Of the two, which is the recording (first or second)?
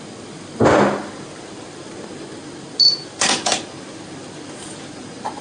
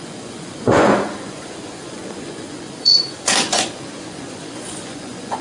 first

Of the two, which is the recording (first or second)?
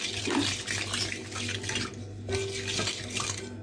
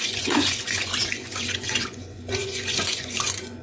first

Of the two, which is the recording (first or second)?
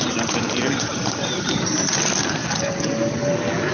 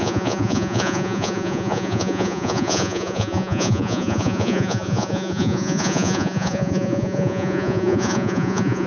first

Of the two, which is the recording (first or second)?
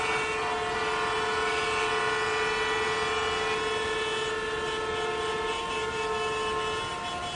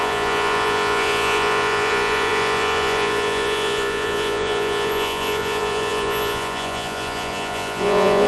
first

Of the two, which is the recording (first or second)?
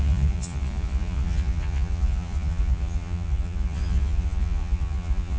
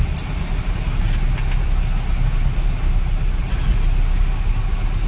second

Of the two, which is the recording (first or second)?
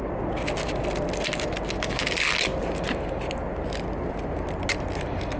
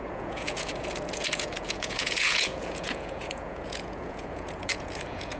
first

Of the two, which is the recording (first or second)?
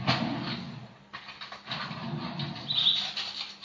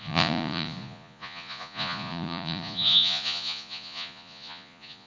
first